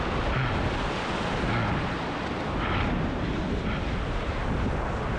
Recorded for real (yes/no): yes